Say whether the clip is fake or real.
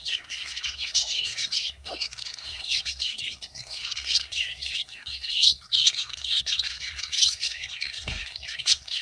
fake